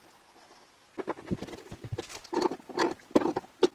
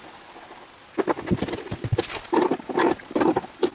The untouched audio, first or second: first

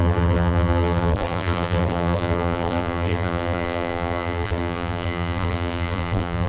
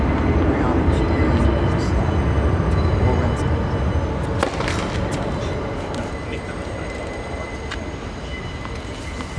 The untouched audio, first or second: second